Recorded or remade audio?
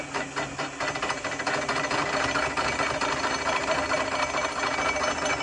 recorded